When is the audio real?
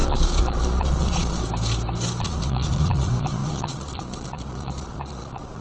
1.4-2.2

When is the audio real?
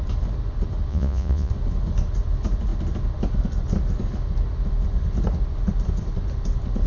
0.0-0.9; 1.5-6.9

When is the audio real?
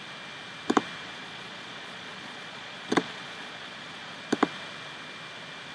0.0-1.0; 4.2-5.7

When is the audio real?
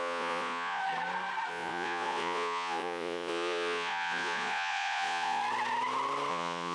0.8-1.5; 5.4-6.3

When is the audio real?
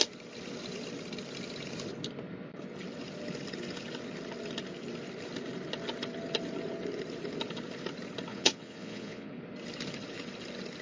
0.0-8.3; 9.3-10.8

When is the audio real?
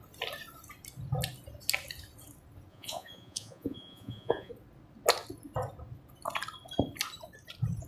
0.0-2.7; 4.5-7.9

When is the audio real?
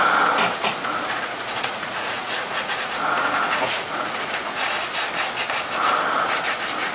0.0-0.6; 4.7-6.9